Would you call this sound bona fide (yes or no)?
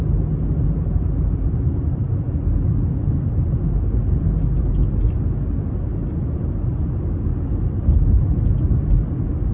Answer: yes